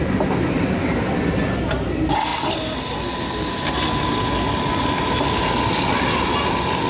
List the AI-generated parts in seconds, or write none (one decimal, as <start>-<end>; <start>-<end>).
none

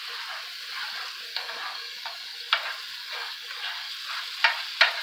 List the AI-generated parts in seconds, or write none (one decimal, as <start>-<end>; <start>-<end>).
1.3-2.5; 3.0-3.9

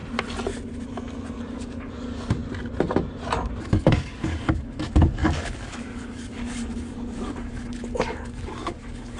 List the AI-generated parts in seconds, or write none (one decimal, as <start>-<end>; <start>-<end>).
1.5-2.4; 3.6-9.2

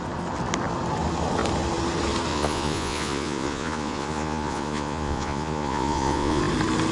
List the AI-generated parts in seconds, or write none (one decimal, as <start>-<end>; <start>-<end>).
2.3-6.4

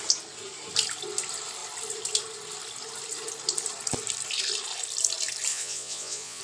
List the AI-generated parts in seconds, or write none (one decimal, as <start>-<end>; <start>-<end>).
5.5-6.4